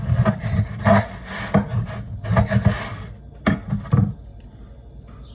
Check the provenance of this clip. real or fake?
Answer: real